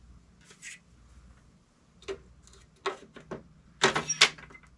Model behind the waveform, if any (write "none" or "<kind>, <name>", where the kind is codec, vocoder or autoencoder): none